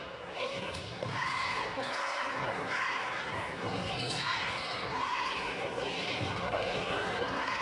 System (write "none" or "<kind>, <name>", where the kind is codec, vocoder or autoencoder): codec, SNAC